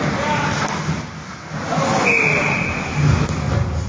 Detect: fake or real real